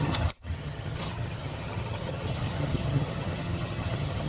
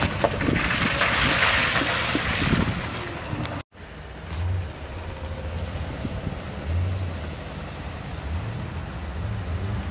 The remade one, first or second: first